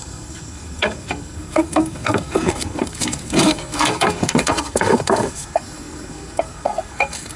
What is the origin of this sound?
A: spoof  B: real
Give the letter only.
A